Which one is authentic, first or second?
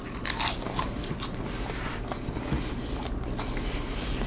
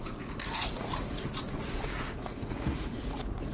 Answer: first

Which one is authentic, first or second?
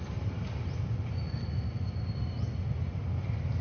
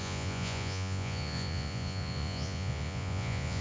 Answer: first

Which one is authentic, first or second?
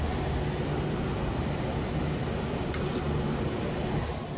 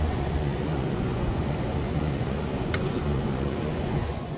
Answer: first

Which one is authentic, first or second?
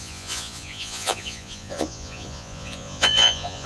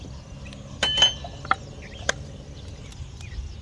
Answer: second